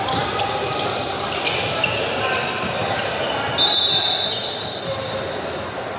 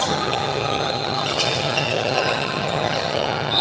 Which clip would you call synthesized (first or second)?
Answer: second